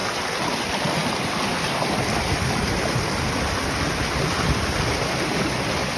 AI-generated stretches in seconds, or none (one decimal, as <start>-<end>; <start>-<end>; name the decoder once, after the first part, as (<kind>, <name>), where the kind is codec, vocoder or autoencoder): none